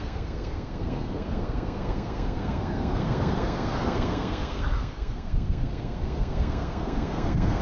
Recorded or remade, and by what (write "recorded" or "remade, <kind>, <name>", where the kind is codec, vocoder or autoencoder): remade, codec, SNAC